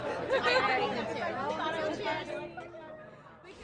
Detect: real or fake real